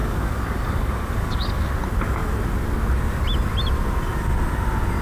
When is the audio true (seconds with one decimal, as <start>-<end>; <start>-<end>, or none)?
1.6-5.0